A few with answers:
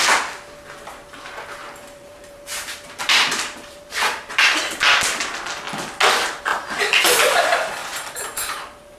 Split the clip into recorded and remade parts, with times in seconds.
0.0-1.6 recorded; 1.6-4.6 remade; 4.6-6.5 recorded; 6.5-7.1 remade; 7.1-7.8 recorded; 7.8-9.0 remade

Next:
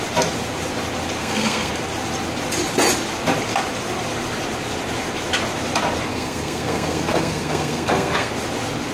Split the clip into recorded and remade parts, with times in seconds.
0.0-1.2 recorded; 1.2-1.7 remade; 1.7-6.1 recorded; 6.1-8.3 remade; 8.3-8.9 recorded

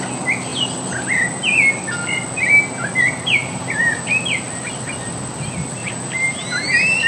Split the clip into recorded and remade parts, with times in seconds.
0.0-3.4 recorded; 3.4-4.1 remade; 4.1-5.8 recorded; 5.8-7.1 remade

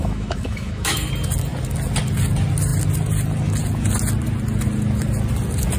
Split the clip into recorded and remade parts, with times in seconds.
0.0-1.1 remade; 1.1-5.8 recorded

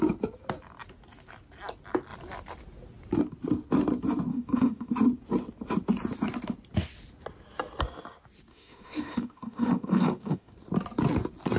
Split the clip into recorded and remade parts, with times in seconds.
0.0-4.3 recorded; 4.3-4.9 remade; 4.9-8.5 recorded; 8.5-10.5 remade; 10.5-11.6 recorded

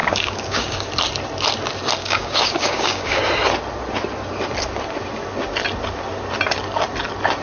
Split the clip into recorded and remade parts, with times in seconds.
0.0-0.9 remade; 0.9-2.0 recorded; 2.0-3.2 remade; 3.2-7.4 recorded